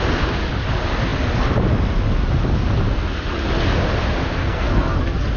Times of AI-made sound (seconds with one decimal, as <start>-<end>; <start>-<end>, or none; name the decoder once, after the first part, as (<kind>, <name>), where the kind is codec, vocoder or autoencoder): 4.4-5.0 (codec, SNAC)